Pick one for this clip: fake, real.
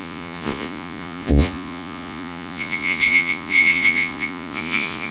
fake